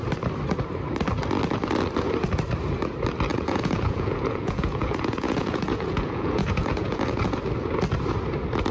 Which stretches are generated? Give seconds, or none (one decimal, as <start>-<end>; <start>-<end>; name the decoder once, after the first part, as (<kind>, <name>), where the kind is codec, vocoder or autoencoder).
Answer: 3.3-7.4 (vocoder, Vocos)